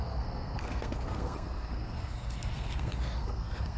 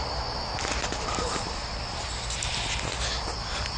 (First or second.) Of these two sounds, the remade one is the first